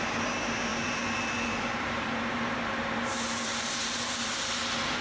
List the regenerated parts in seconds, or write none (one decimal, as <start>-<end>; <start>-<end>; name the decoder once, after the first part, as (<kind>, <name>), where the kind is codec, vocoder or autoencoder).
0.7-3.7 (vocoder, BigVGAN v2)